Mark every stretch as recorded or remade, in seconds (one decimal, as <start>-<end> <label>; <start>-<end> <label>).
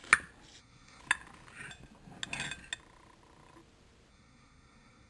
0.0-0.6 recorded; 0.6-1.0 remade; 1.0-4.1 recorded; 4.1-5.1 remade